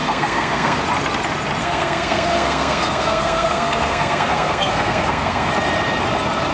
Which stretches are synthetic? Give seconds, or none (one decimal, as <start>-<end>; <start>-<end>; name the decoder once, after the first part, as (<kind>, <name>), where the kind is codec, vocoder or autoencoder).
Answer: 0.0-0.8 (codec, SNAC); 1.6-5.5

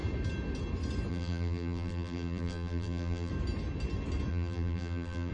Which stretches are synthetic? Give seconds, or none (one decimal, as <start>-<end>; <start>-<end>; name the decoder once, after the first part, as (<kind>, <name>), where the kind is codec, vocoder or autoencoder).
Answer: 1.1-3.3 (vocoder, BigVGAN v2); 4.3-5.3